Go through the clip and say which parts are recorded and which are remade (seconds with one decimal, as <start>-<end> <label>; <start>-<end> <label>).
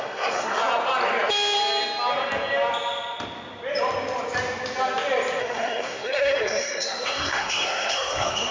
0.0-0.6 remade; 0.6-5.4 recorded; 5.4-8.5 remade